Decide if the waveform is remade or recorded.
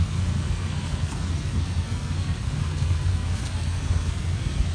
remade